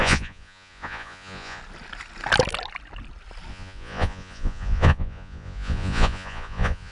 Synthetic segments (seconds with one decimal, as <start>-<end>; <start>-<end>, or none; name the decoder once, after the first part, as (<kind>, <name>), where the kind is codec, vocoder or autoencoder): 0.0-1.6 (vocoder, Vocos); 3.5-6.9